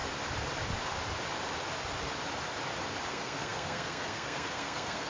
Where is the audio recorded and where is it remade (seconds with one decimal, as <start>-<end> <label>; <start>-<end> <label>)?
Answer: 0.0-3.1 recorded; 3.1-5.1 remade